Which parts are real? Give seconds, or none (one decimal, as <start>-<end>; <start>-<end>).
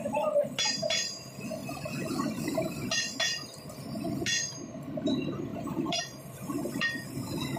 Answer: 0.0-5.5; 6.0-7.6